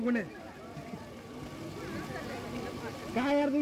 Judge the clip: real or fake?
real